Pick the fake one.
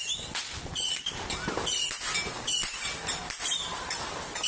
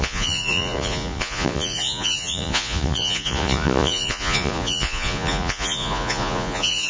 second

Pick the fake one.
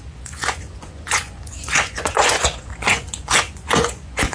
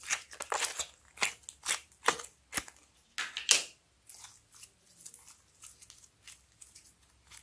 first